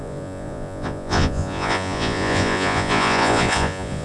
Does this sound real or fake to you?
fake